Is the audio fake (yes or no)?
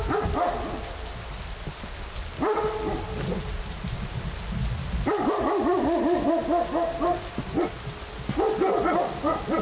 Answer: no